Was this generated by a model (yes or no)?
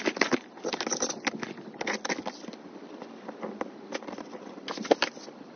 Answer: no